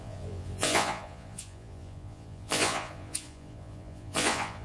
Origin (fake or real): fake